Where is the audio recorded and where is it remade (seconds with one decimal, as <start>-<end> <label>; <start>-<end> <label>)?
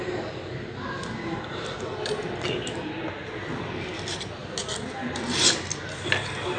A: 0.0-6.6 recorded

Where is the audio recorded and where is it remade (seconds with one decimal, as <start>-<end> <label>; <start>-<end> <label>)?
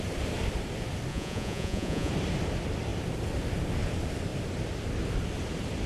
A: 0.0-1.1 recorded; 1.1-2.1 remade; 2.1-5.9 recorded